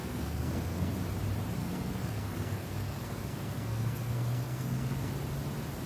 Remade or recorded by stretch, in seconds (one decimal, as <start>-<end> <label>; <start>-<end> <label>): 0.0-0.9 remade; 0.9-1.6 recorded; 1.6-5.1 remade; 5.1-5.9 recorded